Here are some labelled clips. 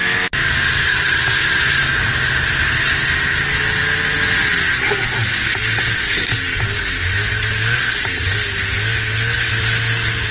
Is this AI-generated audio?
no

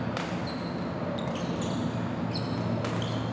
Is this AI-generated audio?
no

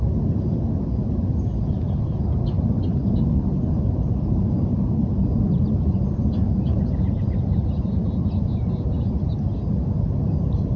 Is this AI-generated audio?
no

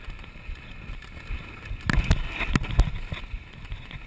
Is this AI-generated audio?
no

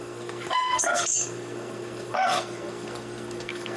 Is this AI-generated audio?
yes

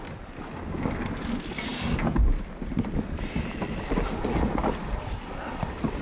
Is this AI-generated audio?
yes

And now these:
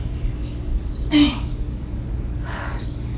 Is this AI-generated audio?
yes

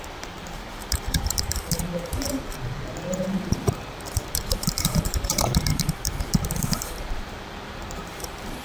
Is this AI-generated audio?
yes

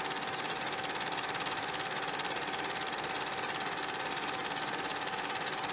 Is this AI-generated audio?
no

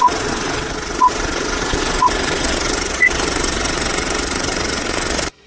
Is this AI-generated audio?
yes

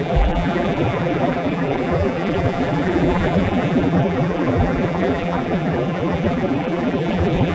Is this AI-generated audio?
yes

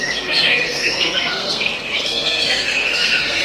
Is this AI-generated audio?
yes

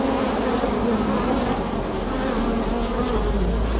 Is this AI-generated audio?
no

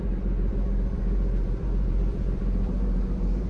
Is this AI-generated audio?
yes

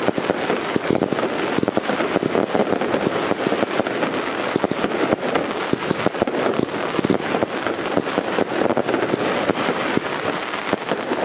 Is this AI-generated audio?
no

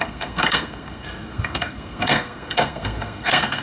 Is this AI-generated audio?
yes